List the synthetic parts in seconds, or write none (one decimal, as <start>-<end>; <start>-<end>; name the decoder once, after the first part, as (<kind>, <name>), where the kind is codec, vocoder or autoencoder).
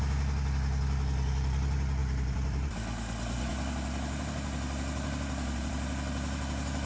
2.0-2.7 (vocoder, BigVGAN v2)